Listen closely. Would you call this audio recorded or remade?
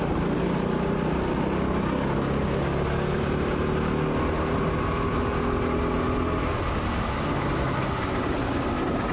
recorded